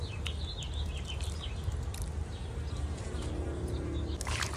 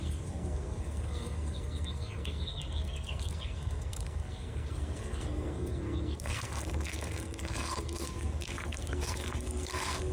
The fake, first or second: second